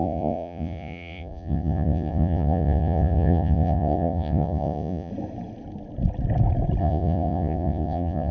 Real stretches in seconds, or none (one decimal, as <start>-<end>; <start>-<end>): 5.1-6.8